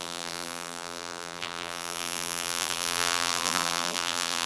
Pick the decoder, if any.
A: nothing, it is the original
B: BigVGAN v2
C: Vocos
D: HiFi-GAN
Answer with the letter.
B